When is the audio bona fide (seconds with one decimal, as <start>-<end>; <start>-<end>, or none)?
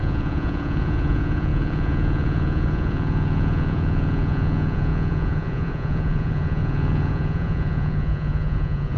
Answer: none